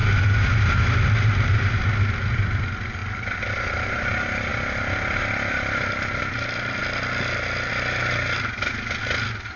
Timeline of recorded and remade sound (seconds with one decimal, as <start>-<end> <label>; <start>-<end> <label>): 0.0-3.0 recorded; 3.0-4.0 remade; 4.0-9.6 recorded